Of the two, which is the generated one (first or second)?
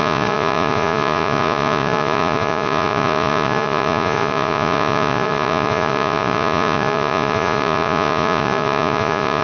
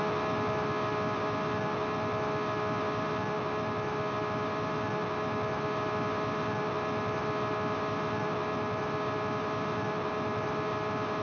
first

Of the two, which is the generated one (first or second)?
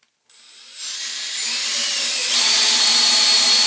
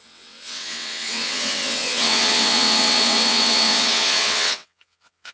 second